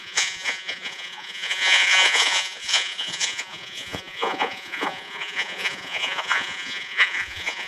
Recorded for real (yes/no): no